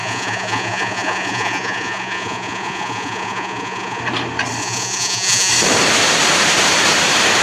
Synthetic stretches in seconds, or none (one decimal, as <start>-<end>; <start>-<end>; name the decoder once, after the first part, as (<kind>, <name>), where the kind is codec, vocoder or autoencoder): 0.0-4.0 (vocoder, Vocos); 4.6-5.5